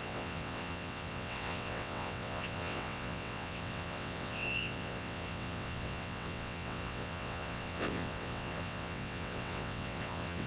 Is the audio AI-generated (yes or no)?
yes